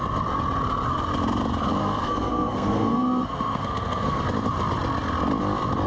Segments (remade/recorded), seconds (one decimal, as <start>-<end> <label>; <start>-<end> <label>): 0.0-1.8 recorded; 1.8-4.2 remade; 4.2-5.9 recorded